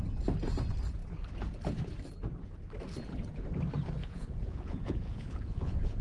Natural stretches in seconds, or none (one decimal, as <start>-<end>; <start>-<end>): 0.0-4.0